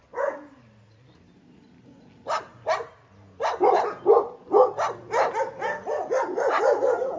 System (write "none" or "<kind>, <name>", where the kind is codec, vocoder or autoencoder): none